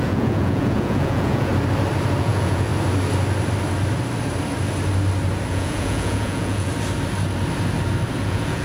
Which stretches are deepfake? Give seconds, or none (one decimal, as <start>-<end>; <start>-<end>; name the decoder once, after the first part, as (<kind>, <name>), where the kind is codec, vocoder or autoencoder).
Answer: 0.0-1.5 (vocoder, Vocos); 2.2-2.7; 5.5-6.7; 8.2-8.6